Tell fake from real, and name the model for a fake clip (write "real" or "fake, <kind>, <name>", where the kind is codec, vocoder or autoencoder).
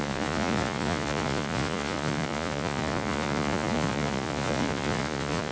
fake, vocoder, Vocos